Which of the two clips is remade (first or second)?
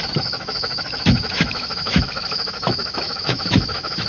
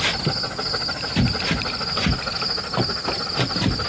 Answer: first